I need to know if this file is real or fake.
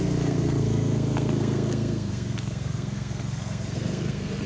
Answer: fake